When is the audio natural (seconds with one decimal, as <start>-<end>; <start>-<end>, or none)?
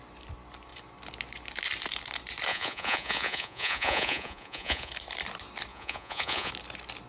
0.0-2.5; 4.9-5.7; 6.5-7.1